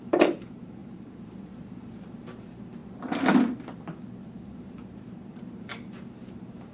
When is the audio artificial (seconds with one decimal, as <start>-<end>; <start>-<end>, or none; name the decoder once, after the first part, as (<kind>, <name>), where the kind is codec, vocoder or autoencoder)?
0.0-2.8 (vocoder, BigVGAN v2); 4.5-6.7